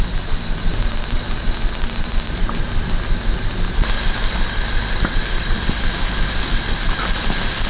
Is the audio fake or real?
real